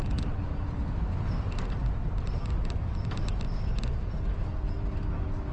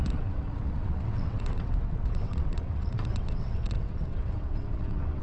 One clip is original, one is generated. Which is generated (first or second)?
second